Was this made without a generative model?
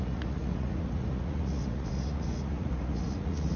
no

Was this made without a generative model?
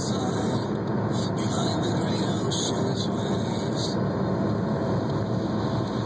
yes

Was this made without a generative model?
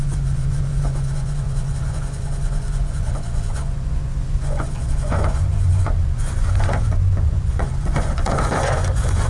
no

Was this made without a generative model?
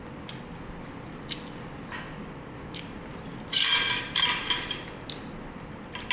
yes